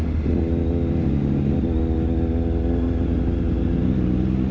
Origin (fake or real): real